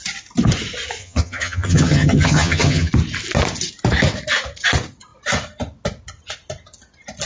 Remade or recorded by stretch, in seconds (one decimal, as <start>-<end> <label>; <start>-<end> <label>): 0.0-1.0 recorded; 1.0-2.9 remade; 2.9-7.3 recorded